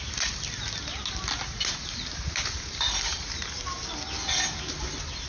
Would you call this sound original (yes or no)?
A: yes